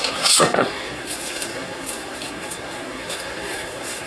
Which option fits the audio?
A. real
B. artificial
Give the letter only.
B